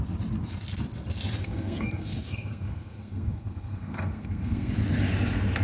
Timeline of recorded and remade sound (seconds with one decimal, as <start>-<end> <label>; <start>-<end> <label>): 0.0-1.4 recorded; 1.4-4.7 remade; 4.7-5.6 recorded